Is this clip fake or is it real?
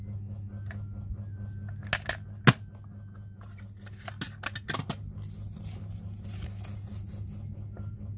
real